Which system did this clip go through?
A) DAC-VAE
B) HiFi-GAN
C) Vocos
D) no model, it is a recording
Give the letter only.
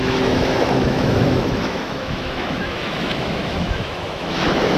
A